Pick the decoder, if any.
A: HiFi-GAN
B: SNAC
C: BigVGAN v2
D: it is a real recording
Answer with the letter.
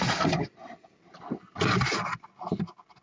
D